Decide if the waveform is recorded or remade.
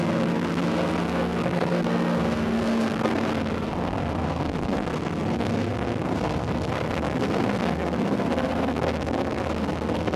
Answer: remade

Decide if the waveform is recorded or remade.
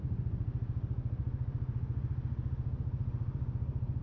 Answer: recorded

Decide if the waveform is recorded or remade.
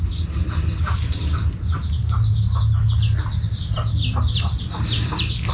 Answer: recorded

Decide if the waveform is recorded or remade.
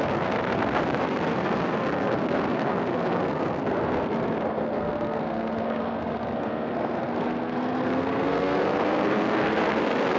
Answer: remade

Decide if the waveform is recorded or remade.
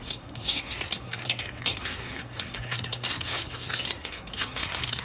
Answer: remade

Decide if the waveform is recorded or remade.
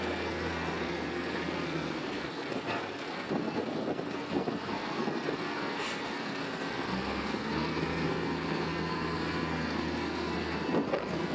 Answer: remade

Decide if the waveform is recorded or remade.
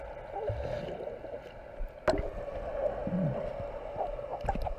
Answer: recorded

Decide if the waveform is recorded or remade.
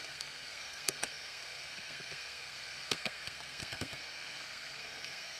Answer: remade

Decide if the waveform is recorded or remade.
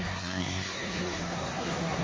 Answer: remade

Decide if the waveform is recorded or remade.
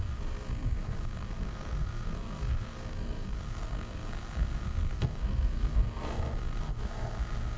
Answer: remade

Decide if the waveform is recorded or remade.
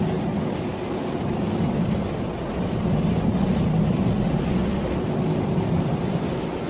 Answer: recorded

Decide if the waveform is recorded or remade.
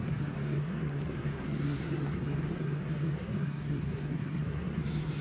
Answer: remade